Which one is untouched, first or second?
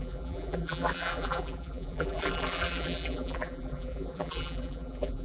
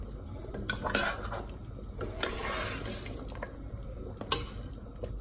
second